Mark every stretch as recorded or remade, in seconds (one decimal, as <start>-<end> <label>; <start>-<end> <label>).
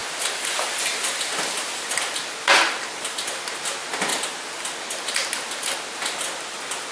0.0-6.9 recorded